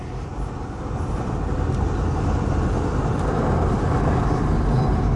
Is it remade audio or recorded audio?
recorded